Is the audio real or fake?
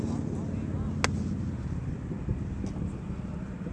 real